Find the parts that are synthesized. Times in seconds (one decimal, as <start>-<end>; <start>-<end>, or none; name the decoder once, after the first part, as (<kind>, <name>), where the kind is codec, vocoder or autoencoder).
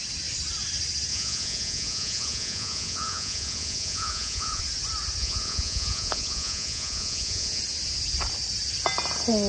1.1-4.6 (vocoder, Vocos); 5.2-7.6